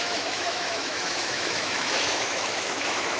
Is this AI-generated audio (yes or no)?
yes